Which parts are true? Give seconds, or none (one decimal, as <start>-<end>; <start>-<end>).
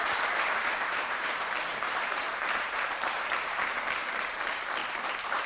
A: 3.3-4.8